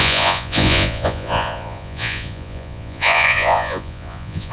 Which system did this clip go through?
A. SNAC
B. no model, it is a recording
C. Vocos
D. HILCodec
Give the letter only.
C